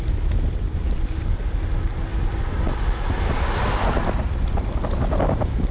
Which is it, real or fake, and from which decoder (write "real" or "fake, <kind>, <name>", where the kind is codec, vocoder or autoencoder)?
real